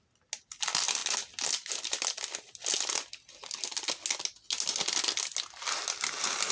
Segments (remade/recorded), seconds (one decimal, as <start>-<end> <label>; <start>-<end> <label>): 0.0-6.5 recorded